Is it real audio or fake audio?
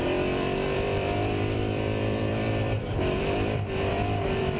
fake